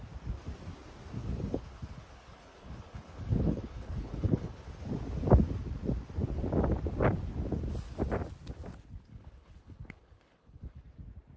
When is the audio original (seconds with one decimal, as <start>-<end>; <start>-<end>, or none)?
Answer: 0.0-1.2; 4.7-9.1; 10.8-11.4